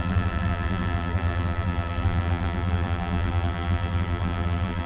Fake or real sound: fake